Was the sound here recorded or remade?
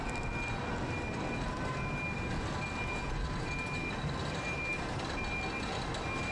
recorded